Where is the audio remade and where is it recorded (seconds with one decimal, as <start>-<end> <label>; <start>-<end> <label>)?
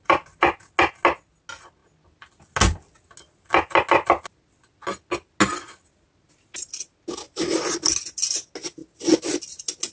0.0-9.9 recorded